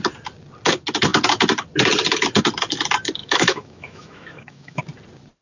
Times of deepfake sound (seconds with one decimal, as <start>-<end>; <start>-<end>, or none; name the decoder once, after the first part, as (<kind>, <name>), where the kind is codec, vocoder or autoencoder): 3.2-4.8 (autoencoder, DAC-VAE)